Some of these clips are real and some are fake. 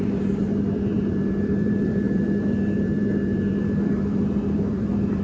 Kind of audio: fake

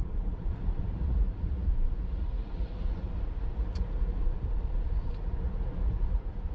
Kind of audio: fake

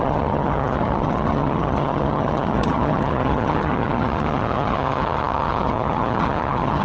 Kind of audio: fake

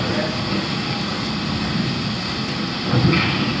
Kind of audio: real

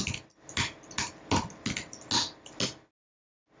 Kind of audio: real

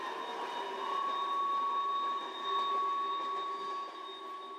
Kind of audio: real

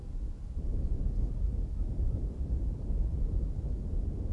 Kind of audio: real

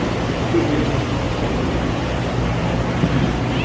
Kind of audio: fake